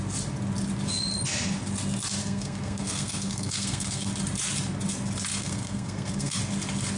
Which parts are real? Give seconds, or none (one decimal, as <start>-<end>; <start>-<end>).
0.0-2.2; 4.1-5.3; 6.4-7.0